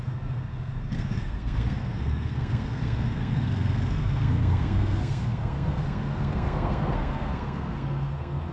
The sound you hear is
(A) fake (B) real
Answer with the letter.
A